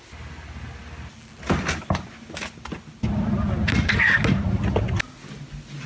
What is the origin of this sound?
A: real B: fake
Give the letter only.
A